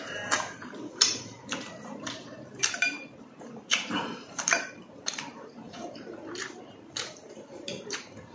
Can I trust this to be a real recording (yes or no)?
no